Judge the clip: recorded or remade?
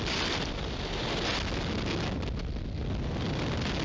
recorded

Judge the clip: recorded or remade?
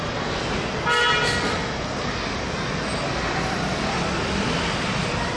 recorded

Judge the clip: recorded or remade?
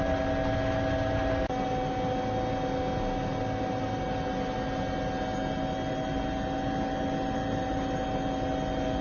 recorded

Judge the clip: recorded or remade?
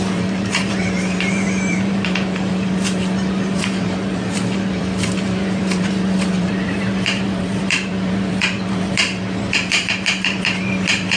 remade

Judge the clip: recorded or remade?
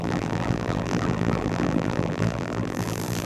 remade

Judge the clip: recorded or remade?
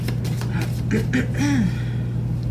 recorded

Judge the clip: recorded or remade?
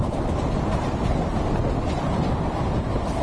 recorded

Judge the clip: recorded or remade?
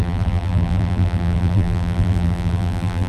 remade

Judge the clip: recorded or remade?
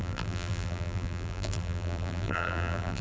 remade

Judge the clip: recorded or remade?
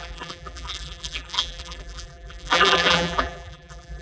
remade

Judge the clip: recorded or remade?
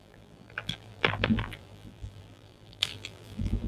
remade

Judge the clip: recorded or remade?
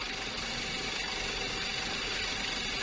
recorded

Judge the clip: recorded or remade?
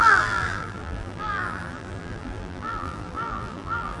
remade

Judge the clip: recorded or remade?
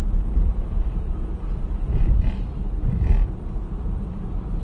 remade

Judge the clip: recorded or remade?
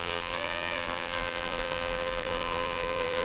remade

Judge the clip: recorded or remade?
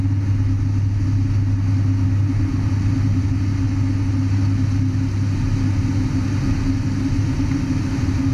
recorded